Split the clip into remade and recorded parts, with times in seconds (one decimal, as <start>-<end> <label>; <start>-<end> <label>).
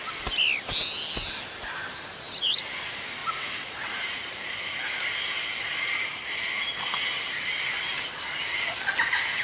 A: 0.0-3.2 recorded; 3.2-4.5 remade; 4.5-9.4 recorded